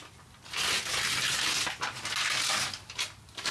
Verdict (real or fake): real